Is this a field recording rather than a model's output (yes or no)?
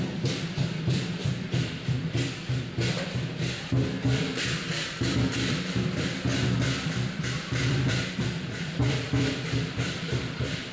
no